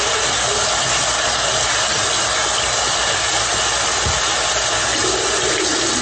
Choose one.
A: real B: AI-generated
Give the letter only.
A